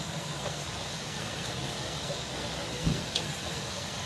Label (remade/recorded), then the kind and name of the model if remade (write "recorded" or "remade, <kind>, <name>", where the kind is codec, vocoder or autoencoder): remade, codec, SNAC